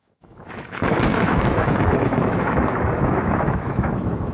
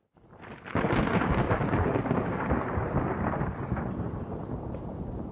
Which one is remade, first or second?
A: first